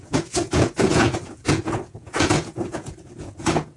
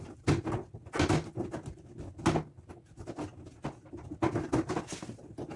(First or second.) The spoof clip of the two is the first